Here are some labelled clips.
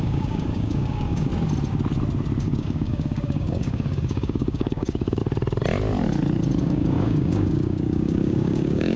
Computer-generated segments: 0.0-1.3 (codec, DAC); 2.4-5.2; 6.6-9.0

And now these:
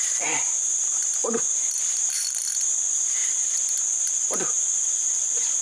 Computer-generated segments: 0.0-1.1 (vocoder, BigVGAN v2); 1.9-3.2

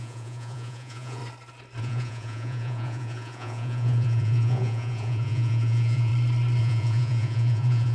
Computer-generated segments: 0.0-1.2 (vocoder, Vocos); 1.8-6.1; 6.6-7.9

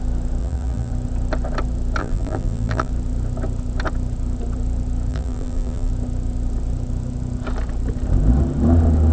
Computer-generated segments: 0.4-0.9 (vocoder, BigVGAN v2); 2.0-2.9; 5.1-5.9